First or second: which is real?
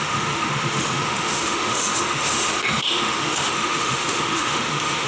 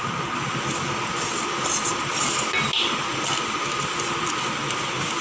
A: second